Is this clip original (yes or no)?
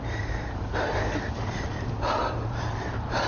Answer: no